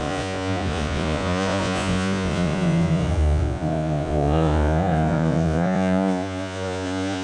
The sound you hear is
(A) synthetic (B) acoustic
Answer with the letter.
A